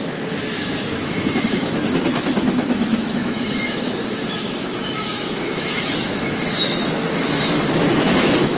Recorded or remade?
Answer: remade